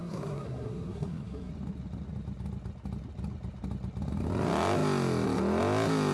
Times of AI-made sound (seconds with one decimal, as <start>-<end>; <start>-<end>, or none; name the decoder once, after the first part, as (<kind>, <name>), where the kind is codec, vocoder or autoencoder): 0.0-1.5 (codec, SNAC)